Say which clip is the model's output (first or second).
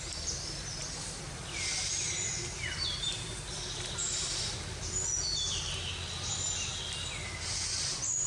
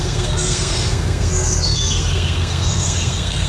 second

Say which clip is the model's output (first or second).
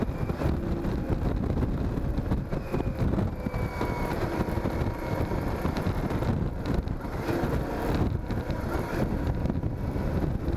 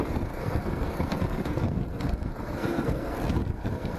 second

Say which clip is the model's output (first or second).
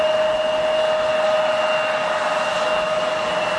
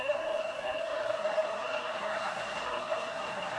second